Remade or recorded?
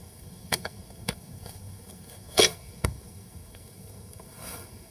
remade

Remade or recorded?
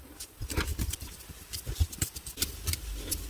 recorded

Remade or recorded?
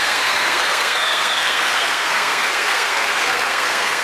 remade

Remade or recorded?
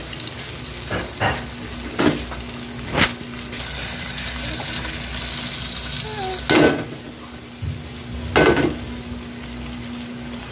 recorded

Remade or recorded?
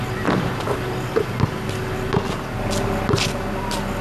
recorded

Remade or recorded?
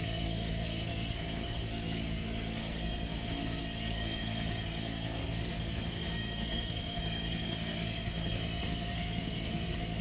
remade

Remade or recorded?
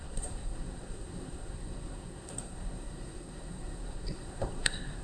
remade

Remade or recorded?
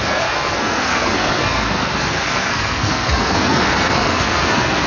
remade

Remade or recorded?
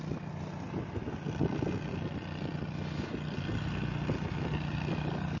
recorded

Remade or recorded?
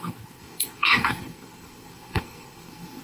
remade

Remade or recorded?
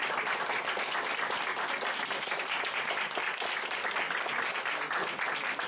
recorded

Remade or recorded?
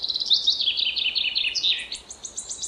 recorded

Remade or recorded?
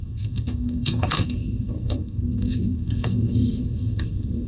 remade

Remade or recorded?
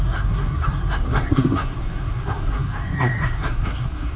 remade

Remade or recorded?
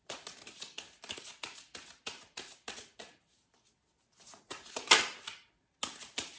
recorded